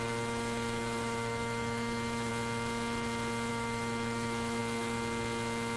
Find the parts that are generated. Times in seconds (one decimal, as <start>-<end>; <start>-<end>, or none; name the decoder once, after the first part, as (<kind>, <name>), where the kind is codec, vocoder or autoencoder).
0.0-2.3 (autoencoder, DAC-VAE); 3.5-4.6